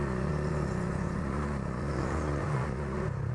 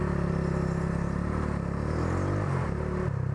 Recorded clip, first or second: second